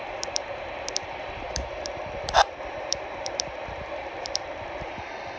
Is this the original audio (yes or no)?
no